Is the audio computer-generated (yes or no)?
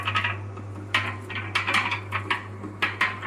no